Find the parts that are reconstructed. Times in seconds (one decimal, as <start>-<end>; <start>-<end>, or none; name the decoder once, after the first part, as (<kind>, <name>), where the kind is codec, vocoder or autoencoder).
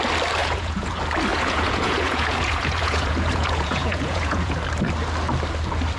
0.4-0.9 (vocoder, Vocos); 1.3-4.6